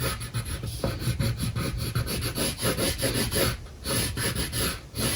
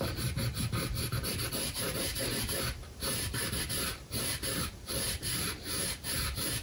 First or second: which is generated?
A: second